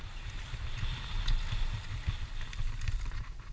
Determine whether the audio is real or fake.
real